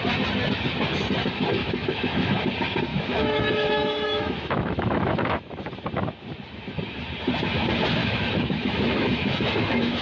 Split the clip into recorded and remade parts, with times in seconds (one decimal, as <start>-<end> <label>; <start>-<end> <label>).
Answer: 0.0-1.6 recorded; 1.6-2.3 remade; 2.3-2.9 recorded; 2.9-5.6 remade; 5.6-8.0 recorded; 8.0-10.0 remade